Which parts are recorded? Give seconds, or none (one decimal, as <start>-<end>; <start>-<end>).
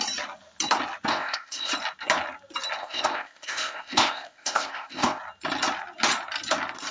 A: 0.0-1.1; 1.7-2.8; 5.2-6.9